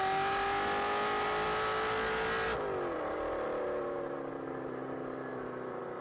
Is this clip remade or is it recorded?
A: recorded